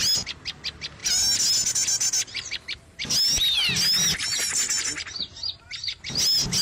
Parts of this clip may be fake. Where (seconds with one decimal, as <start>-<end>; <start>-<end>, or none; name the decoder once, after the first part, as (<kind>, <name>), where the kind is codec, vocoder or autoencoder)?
none